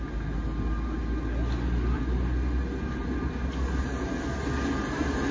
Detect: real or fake real